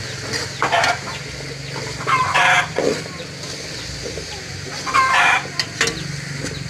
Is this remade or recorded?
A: recorded